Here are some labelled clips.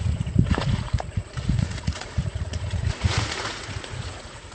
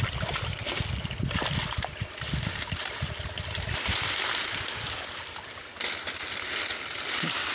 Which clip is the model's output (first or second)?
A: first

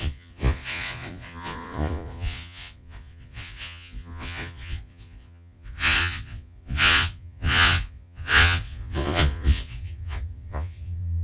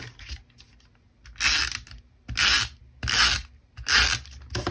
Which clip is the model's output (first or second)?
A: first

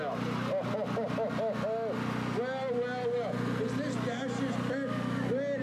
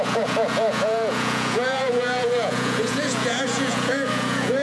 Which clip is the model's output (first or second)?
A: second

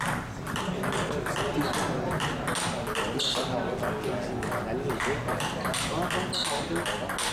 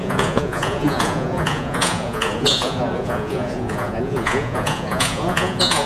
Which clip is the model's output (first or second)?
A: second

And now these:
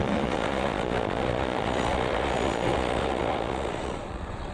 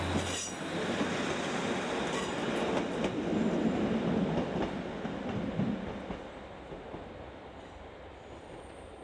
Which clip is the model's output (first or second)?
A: first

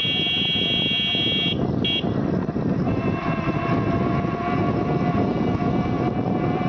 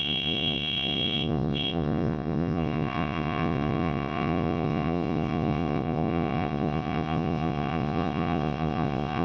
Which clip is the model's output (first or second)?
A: second